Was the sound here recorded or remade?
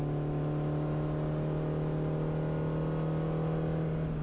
recorded